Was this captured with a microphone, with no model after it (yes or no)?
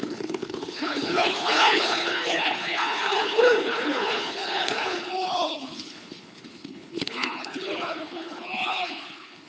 no